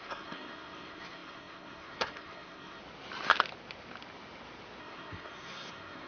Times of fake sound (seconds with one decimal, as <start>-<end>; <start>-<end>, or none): 0.0-2.8; 4.8-6.1